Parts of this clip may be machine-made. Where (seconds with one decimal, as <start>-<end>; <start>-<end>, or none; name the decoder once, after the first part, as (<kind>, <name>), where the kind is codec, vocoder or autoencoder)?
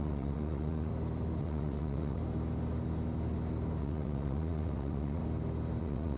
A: 0.0-0.9 (vocoder, WaveNeXt); 1.4-2.2; 3.8-5.2; 5.8-6.2